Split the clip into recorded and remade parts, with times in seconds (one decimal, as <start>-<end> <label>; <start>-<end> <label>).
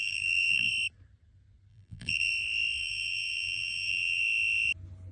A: 0.0-0.7 remade; 0.7-1.7 recorded; 1.7-2.3 remade; 2.3-2.8 recorded; 2.8-4.2 remade; 4.2-5.1 recorded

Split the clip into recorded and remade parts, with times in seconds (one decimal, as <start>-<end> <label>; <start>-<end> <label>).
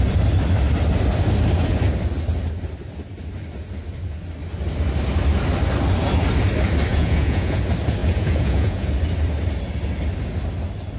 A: 0.0-6.9 recorded; 6.9-7.6 remade; 7.6-8.0 recorded; 8.0-8.9 remade; 8.9-11.0 recorded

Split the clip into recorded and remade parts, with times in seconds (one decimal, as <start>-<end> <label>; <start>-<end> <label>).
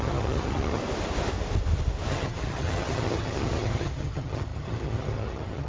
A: 0.0-0.8 remade; 0.8-2.1 recorded; 2.1-5.7 remade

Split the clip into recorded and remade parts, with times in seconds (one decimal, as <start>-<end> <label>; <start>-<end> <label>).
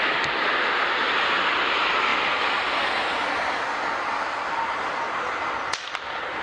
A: 0.0-6.4 recorded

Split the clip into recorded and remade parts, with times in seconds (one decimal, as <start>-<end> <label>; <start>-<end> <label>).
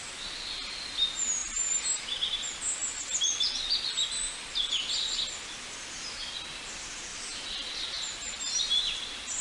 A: 0.0-7.1 recorded; 7.1-7.7 remade; 7.7-9.4 recorded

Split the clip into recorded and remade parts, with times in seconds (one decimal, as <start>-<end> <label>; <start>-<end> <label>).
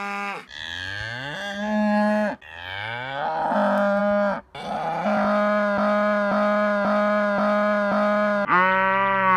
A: 0.0-9.4 recorded